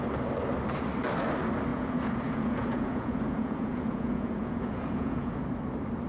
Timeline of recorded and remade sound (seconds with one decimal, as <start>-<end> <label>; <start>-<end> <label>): 0.0-1.7 recorded; 1.7-5.4 remade; 5.4-6.1 recorded